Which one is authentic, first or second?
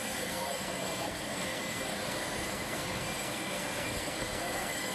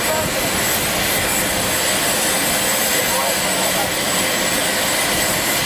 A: second